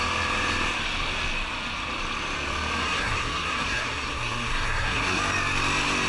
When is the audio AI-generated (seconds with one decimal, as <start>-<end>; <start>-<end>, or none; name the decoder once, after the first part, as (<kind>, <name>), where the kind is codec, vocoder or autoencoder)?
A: 2.8-5.2 (codec, SNAC)